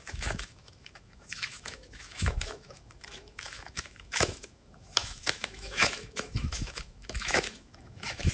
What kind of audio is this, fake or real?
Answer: fake